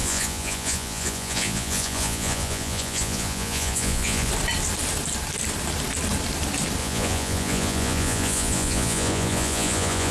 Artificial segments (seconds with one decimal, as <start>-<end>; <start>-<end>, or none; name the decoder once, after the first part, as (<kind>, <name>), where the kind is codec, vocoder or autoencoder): 0.0-4.3 (vocoder, Vocos); 6.8-10.1